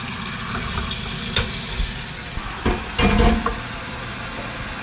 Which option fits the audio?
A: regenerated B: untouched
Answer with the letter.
B